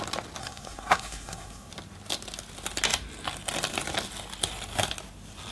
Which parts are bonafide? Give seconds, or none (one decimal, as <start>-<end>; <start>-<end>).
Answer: 0.0-0.4; 1.7-5.5